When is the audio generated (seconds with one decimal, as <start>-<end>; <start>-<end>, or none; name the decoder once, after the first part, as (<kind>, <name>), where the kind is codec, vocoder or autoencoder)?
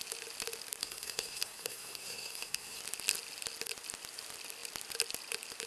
0.8-2.8 (codec, SNAC)